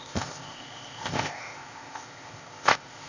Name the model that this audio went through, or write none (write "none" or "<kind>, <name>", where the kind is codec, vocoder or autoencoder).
codec, ZipCodec